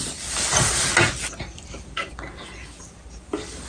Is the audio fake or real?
real